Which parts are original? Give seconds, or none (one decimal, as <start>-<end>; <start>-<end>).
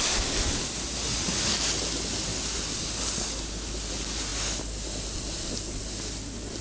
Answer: 0.0-6.6